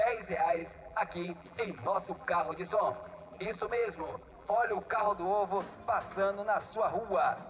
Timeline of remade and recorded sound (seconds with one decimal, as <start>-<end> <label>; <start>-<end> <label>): 0.0-5.1 remade; 5.1-7.5 recorded